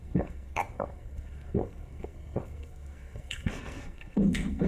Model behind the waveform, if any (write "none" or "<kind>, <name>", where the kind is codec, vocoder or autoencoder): codec, SNAC